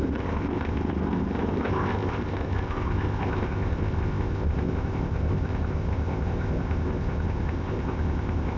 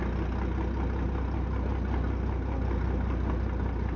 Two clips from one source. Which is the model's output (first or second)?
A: first